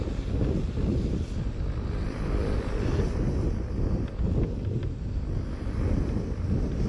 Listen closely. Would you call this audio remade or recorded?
recorded